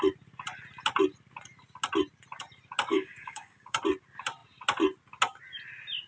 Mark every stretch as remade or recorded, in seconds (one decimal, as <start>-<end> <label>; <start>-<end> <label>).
0.0-2.9 recorded; 2.9-3.8 remade; 3.8-6.1 recorded